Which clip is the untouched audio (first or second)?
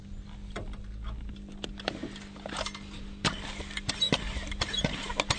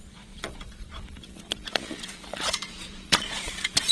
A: first